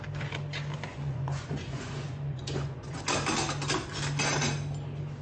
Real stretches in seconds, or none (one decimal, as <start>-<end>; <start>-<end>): 0.0-0.9; 3.0-5.2